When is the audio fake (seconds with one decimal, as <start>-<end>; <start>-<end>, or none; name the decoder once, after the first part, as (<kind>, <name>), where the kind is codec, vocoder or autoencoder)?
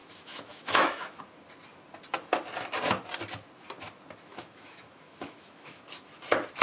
0.0-1.2 (autoencoder, DAC-VAE); 4.3-5.8